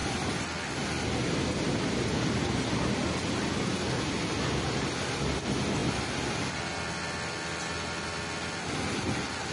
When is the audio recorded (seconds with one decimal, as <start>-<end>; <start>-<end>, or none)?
0.0-9.5